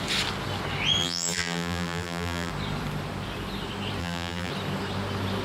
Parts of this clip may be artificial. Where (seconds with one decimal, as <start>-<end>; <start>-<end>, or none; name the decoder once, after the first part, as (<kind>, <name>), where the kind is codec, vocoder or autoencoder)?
1.0-2.5 (vocoder, BigVGAN v2); 4.0-4.5